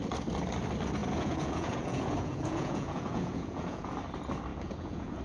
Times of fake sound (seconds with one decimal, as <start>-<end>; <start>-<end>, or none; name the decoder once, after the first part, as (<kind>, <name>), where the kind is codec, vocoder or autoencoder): 1.0-3.9 (vocoder, Vocos); 4.5-5.2